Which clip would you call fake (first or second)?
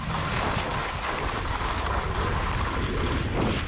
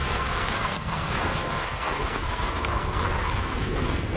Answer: second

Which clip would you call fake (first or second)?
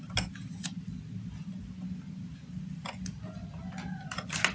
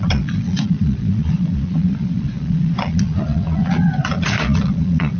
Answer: second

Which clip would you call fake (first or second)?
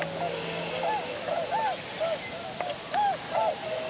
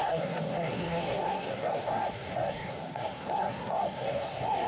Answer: second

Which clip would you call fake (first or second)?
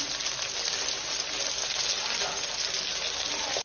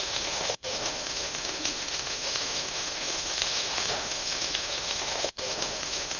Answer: second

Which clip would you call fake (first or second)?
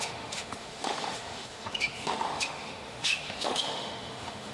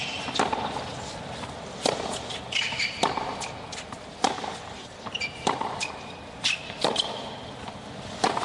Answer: first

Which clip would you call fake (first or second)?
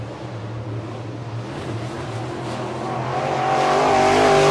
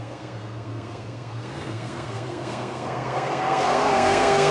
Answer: second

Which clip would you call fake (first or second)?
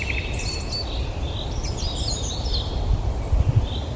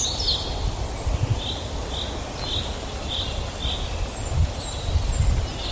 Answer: first